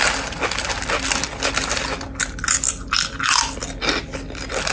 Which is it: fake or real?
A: real